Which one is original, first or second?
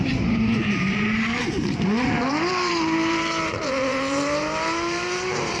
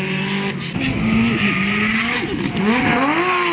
second